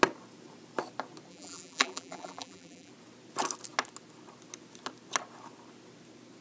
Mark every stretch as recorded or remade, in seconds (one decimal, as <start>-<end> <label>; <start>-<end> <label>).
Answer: 0.0-1.3 recorded; 1.3-2.9 remade; 2.9-6.4 recorded